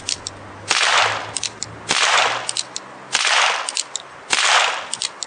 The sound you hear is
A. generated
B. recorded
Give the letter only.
B